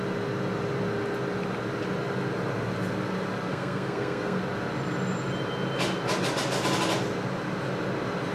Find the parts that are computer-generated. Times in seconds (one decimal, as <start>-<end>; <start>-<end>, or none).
3.5-4.4